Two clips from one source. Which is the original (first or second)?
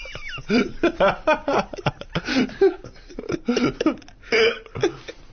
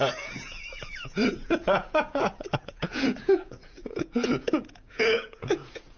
first